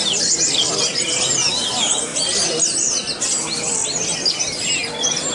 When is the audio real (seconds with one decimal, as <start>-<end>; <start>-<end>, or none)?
0.0-5.3

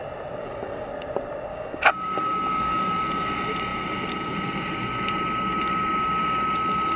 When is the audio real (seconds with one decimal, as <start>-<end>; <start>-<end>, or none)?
0.0-0.4; 0.9-1.5; 3.0-7.0

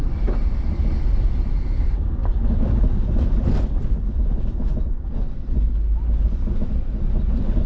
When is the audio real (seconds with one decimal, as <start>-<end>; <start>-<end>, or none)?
0.0-7.7